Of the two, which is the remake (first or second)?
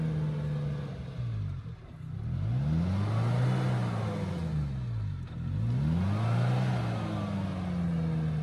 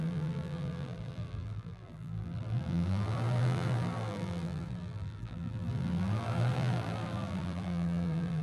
second